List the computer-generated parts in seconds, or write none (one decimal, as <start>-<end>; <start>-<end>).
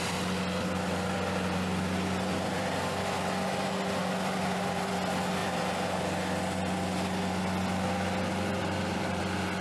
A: 2.3-3.0; 4.0-4.9; 5.4-6.0; 8.6-9.2